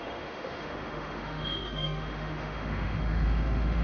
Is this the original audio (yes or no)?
no